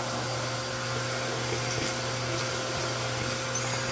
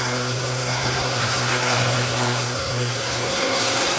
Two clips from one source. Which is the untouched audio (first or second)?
first